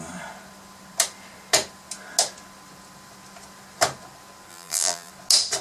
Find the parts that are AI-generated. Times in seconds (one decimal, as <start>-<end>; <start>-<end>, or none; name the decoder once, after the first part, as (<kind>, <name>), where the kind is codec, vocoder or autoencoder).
4.5-5.1 (vocoder, BigVGAN v2)